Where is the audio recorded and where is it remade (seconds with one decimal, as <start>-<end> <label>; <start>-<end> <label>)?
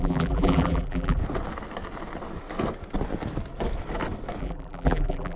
0.0-1.2 remade; 1.2-4.4 recorded; 4.4-5.4 remade